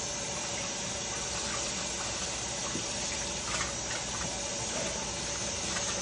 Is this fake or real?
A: real